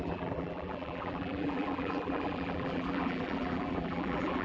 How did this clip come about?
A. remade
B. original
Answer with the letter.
A